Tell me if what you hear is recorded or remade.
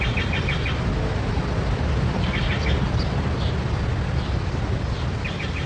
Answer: recorded